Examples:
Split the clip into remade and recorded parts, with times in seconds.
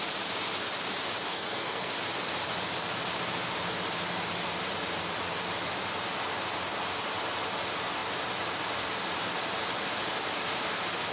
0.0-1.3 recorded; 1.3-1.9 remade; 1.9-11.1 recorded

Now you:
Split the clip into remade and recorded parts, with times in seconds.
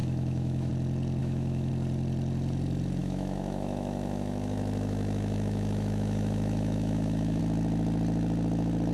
0.0-0.7 remade; 0.7-1.2 recorded; 1.2-1.7 remade; 1.7-3.0 recorded; 3.0-7.4 remade; 7.4-8.9 recorded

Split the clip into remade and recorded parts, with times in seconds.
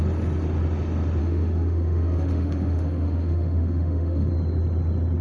0.0-1.2 recorded; 1.2-4.3 remade; 4.3-5.2 recorded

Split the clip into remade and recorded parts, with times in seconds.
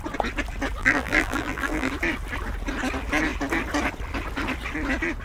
0.0-0.8 recorded; 0.8-1.9 remade; 1.9-5.2 recorded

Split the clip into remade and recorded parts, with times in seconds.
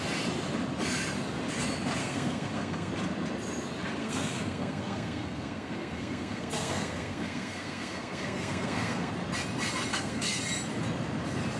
0.0-2.0 recorded; 2.0-2.9 remade; 2.9-4.0 recorded; 4.0-9.1 remade; 9.1-9.9 recorded; 9.9-10.4 remade; 10.4-11.6 recorded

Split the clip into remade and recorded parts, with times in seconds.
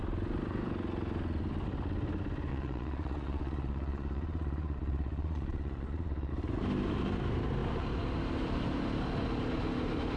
0.0-2.5 recorded; 2.5-6.3 remade; 6.3-10.2 recorded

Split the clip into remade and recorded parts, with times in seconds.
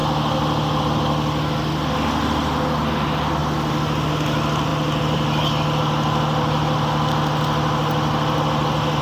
0.0-9.0 recorded